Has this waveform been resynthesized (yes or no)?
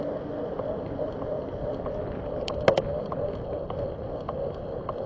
no